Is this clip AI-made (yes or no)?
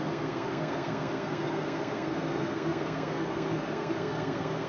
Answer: yes